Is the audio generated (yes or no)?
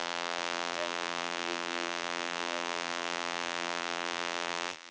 yes